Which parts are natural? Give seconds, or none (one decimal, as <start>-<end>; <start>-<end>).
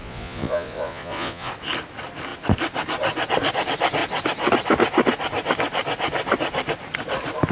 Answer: 1.5-7.5